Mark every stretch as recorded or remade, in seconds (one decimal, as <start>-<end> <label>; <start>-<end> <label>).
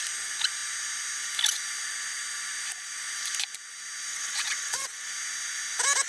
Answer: 0.0-4.1 recorded; 4.1-5.1 remade; 5.1-6.1 recorded